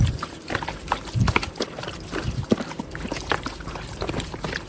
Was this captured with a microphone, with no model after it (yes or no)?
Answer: yes